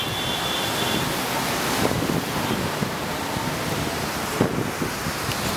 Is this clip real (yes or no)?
yes